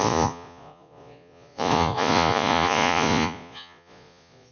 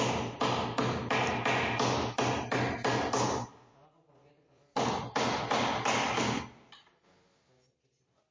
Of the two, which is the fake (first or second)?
first